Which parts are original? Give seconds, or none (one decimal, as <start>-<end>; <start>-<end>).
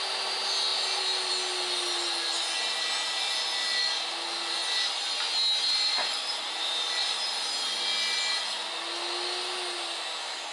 0.0-10.5